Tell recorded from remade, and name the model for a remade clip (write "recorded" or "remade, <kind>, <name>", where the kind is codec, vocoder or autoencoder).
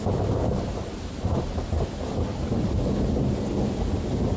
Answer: recorded